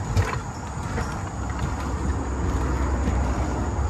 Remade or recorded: recorded